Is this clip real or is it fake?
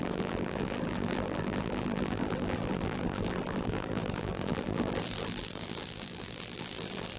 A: fake